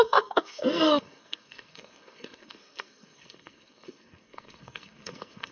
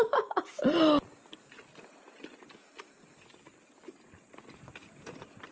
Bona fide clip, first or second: second